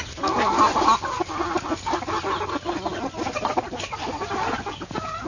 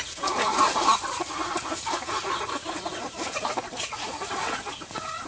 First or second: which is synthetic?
second